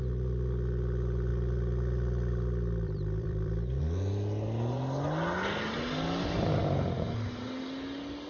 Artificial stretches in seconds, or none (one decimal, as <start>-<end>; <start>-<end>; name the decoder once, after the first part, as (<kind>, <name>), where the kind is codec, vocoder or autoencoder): 1.3-3.8 (vocoder, BigVGAN v2)